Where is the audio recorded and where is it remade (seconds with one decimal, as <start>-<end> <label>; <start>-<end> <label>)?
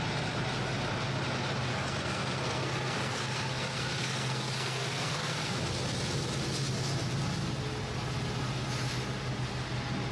0.0-1.7 recorded; 1.7-5.6 remade; 5.6-10.1 recorded